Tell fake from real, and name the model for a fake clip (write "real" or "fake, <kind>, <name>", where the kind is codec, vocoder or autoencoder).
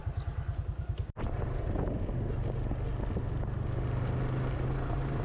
real